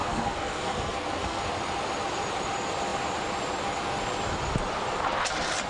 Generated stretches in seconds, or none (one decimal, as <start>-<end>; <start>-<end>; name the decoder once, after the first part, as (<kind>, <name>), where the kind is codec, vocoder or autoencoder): 0.0-1.4 (codec, SNAC)